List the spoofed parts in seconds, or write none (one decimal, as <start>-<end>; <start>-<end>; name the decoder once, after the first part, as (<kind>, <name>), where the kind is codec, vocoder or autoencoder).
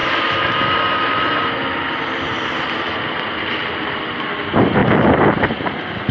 none